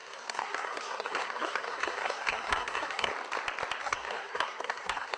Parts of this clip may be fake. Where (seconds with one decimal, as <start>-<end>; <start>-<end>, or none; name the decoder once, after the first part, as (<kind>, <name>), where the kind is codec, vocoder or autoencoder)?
0.0-3.1 (codec, SNAC); 3.8-5.2